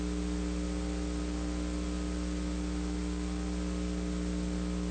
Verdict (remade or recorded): recorded